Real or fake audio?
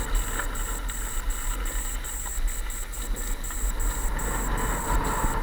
real